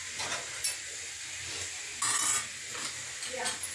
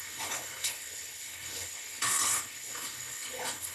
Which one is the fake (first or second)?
second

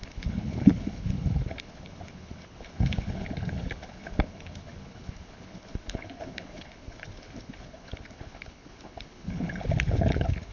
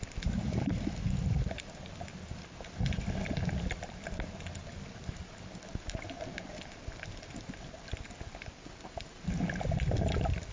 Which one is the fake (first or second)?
first